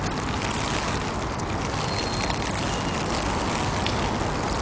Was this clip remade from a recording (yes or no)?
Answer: no